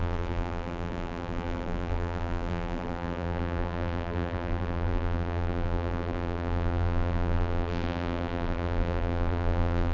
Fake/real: fake